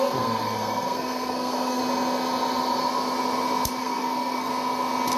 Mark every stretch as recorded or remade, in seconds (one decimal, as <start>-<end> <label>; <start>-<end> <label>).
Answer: 0.0-1.8 remade; 1.8-3.8 recorded; 3.8-4.5 remade; 4.5-5.2 recorded